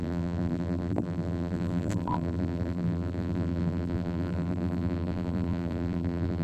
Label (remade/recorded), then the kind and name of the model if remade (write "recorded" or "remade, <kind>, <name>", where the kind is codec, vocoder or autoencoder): remade, vocoder, BigVGAN v2